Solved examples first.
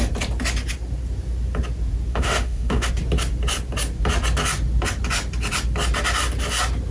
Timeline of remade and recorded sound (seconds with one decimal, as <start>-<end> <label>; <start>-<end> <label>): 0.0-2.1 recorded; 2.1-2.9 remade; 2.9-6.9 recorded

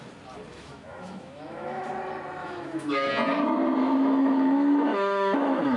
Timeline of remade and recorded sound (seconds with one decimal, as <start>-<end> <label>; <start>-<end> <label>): 0.0-0.5 recorded; 0.5-1.9 remade; 1.9-2.4 recorded; 2.4-3.1 remade; 3.1-3.8 recorded; 3.8-5.8 remade

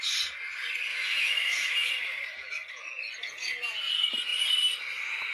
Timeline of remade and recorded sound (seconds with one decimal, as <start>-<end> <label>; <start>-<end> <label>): 0.0-0.9 recorded; 0.9-1.9 remade; 1.9-5.3 recorded